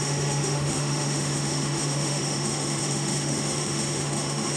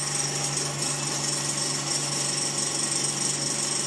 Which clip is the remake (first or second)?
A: first